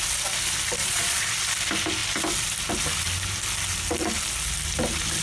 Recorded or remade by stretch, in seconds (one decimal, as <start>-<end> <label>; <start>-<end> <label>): 0.0-0.8 recorded; 0.8-1.3 remade; 1.3-5.2 recorded